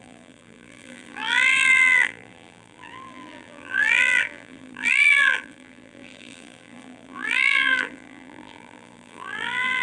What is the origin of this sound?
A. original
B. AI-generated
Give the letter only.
B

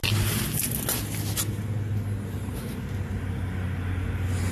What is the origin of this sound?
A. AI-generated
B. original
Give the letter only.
B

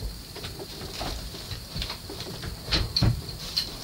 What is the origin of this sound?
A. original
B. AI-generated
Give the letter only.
B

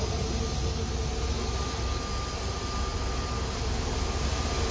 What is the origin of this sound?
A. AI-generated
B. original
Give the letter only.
B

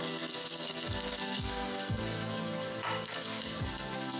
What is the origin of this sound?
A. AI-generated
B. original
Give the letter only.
A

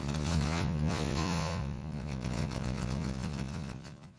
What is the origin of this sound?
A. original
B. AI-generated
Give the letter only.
B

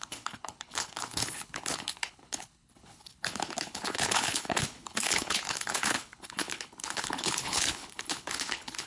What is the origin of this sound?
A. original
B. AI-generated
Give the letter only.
B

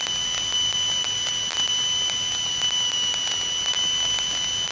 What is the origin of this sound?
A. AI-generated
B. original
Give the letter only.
B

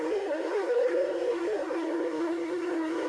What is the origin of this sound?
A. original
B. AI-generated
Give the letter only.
B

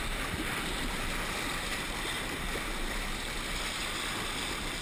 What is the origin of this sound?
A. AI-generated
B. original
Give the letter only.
B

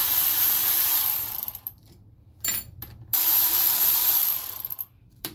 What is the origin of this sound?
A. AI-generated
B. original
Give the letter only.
A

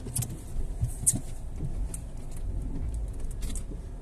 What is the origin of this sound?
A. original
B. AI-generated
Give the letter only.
A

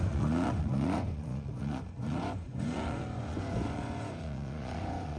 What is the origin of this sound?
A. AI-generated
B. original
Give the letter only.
A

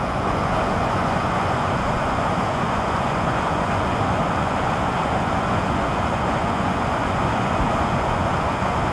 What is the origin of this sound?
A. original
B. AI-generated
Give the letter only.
B